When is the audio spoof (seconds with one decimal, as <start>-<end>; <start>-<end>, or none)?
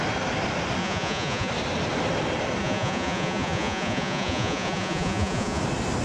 0.8-1.5; 2.6-5.6